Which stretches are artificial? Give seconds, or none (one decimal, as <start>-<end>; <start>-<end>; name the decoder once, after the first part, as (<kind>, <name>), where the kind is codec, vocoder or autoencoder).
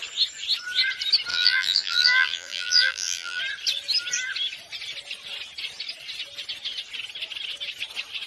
1.3-3.4 (vocoder, BigVGAN v2)